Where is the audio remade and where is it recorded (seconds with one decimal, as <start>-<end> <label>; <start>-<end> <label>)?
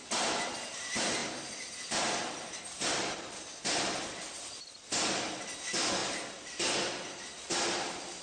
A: 0.0-8.2 recorded